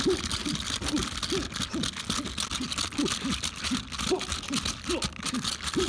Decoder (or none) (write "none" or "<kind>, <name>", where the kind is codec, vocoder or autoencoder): none